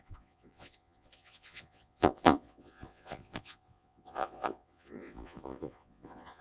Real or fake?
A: fake